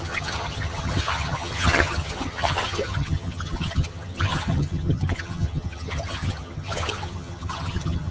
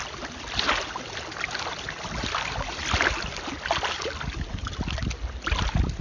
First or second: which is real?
second